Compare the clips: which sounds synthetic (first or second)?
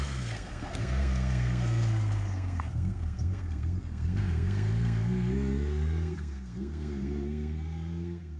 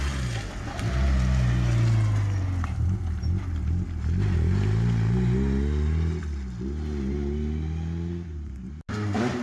first